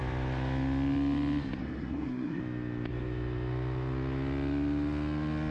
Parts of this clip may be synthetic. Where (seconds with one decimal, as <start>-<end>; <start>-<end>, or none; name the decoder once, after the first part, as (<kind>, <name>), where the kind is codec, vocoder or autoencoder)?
1.6-2.4 (codec, SNAC)